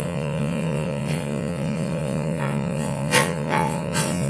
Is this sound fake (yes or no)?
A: yes